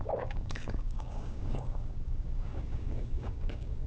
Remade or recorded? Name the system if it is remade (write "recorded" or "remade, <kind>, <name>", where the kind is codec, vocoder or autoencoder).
remade, codec, DAC